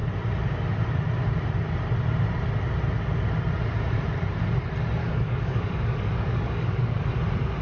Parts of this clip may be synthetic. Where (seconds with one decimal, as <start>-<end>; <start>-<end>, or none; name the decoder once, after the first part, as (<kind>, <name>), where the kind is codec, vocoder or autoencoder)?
5.0-7.0 (codec, DAC)